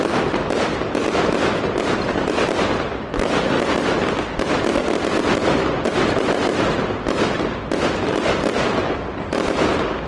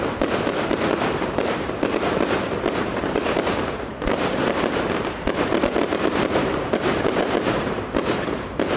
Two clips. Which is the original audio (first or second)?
first